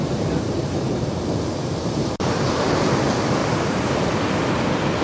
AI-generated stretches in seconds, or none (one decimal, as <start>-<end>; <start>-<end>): 0.0-2.6; 3.4-4.2